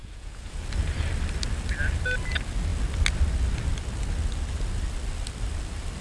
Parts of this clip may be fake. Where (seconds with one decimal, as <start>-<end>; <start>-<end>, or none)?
0.0-0.6